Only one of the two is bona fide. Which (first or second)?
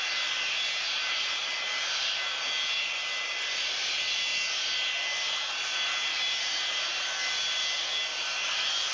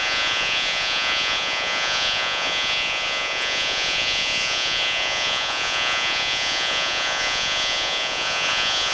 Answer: first